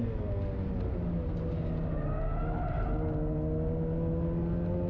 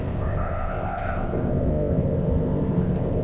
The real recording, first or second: first